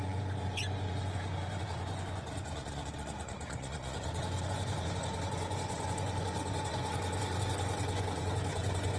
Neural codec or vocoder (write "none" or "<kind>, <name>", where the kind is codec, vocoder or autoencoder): vocoder, Vocos